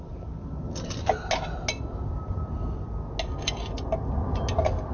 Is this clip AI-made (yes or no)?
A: no